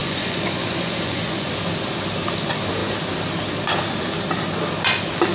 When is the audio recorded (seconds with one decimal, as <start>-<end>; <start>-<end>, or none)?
1.5-5.3